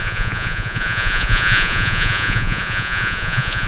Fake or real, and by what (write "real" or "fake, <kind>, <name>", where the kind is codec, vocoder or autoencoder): fake, vocoder, Vocos